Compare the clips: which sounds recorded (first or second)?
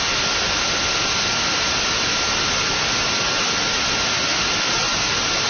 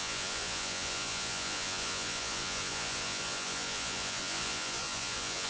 first